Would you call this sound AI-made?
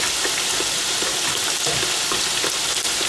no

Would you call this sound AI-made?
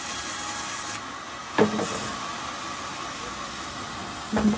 no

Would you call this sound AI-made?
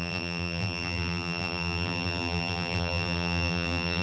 yes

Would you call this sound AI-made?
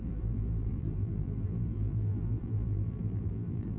yes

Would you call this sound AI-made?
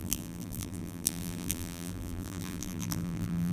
yes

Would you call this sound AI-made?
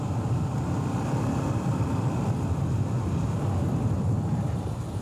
no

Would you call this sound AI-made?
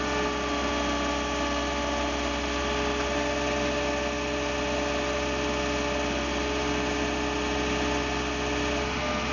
no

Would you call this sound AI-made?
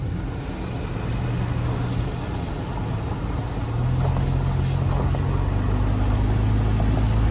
no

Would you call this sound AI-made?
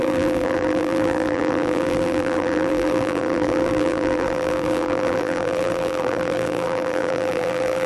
yes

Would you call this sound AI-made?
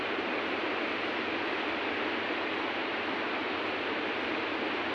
no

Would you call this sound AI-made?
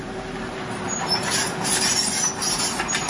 yes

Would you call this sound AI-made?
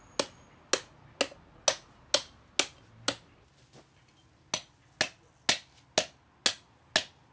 no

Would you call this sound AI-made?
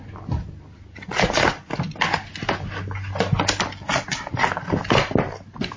no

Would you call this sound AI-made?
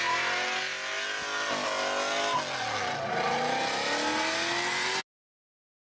no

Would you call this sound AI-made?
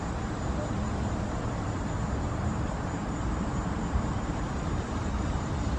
yes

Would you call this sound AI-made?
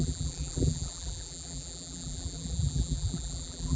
yes